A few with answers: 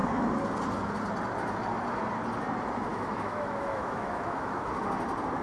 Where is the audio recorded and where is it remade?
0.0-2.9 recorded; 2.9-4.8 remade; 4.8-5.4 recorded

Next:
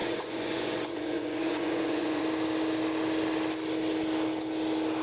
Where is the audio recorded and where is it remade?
0.0-2.2 remade; 2.2-5.0 recorded

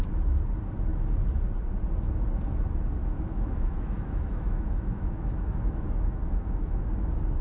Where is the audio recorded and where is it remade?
0.0-3.0 recorded; 3.0-6.8 remade; 6.8-7.4 recorded

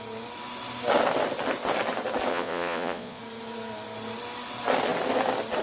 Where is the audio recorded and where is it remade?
0.0-2.3 recorded; 2.3-3.2 remade; 3.2-5.6 recorded

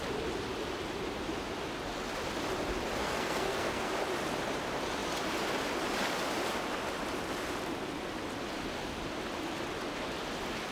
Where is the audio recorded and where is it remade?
0.0-3.0 recorded; 3.0-3.9 remade; 3.9-10.7 recorded

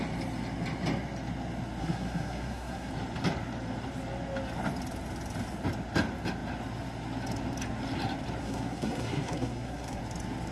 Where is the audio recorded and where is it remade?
0.0-1.8 recorded; 1.8-2.9 remade; 2.9-8.4 recorded; 8.4-10.0 remade; 10.0-10.5 recorded

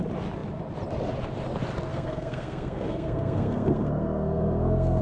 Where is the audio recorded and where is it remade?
0.0-1.9 recorded; 1.9-5.0 remade

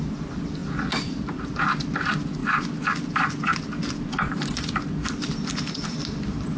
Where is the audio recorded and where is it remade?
0.0-6.6 recorded